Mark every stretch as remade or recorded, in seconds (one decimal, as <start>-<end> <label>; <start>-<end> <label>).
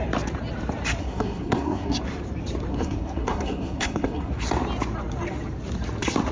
0.0-1.0 recorded; 1.0-2.0 remade; 2.0-2.7 recorded; 2.7-4.3 remade; 4.3-6.3 recorded